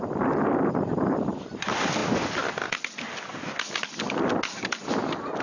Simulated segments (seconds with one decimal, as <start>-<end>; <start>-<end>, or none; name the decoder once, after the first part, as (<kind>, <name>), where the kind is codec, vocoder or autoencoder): none